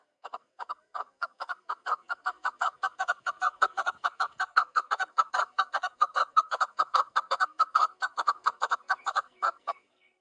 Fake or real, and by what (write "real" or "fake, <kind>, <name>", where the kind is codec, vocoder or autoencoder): fake, codec, SNAC